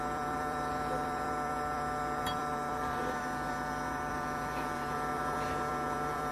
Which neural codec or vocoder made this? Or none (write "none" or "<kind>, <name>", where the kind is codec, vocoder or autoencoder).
vocoder, BigVGAN v2